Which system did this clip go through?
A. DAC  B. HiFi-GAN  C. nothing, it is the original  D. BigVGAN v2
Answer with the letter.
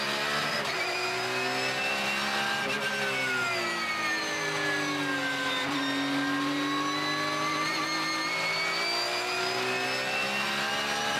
C